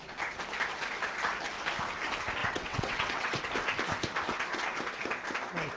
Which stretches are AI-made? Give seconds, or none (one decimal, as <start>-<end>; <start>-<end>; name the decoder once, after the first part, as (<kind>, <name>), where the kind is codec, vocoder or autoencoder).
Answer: 2.4-3.4 (vocoder, WaveNeXt)